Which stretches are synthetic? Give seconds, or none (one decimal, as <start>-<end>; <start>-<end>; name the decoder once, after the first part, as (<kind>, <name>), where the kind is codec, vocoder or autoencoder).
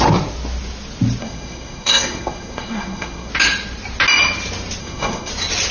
1.2-3.3 (codec, SNAC); 4.8-5.3